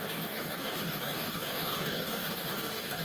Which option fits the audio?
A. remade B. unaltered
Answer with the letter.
A